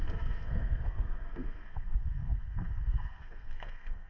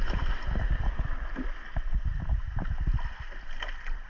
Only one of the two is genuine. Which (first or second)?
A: second